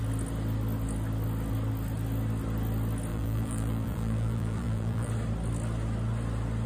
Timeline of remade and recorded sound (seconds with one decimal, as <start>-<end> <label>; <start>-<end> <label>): 0.0-3.1 recorded; 3.1-5.1 remade; 5.1-6.7 recorded